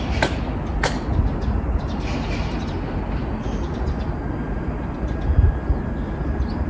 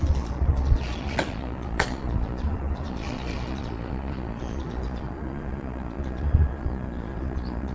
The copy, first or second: second